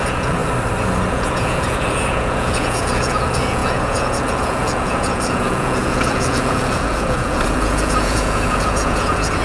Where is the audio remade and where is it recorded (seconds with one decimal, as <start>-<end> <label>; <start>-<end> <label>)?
0.0-0.4 remade; 0.4-1.1 recorded; 1.1-9.4 remade